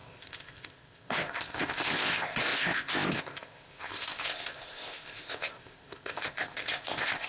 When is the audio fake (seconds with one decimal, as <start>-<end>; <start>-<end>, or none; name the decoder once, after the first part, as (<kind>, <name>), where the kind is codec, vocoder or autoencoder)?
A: 0.0-7.3 (codec, ZipCodec)